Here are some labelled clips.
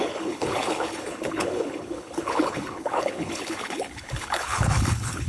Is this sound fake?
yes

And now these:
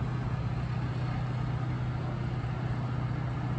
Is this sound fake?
no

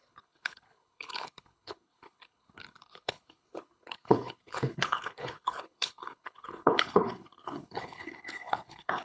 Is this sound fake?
yes